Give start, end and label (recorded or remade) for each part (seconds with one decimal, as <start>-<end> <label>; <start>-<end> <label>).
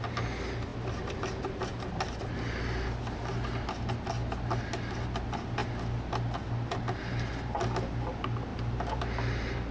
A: 0.0-9.7 recorded